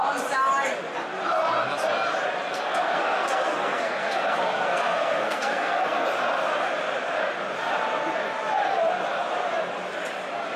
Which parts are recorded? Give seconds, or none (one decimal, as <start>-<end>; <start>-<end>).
0.0-2.5; 6.1-10.6